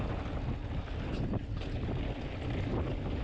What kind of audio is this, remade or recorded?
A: recorded